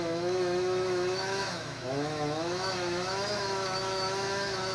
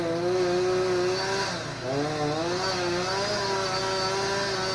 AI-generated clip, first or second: first